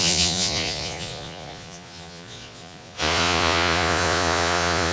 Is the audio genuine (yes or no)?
no